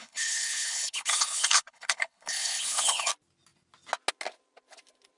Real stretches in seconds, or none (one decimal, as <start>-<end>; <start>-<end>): 3.1-5.2